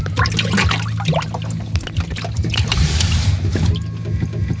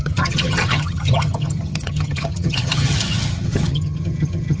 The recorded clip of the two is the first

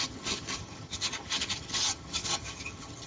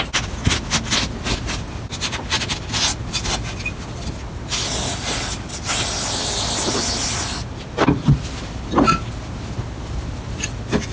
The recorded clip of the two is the second